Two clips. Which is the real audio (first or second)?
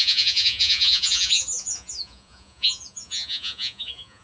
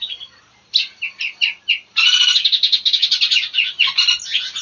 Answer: second